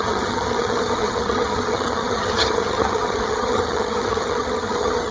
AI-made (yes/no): yes